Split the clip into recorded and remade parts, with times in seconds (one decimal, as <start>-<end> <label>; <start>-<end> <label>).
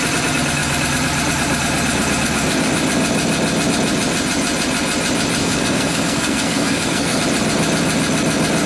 0.0-5.4 recorded; 5.4-7.2 remade; 7.2-8.7 recorded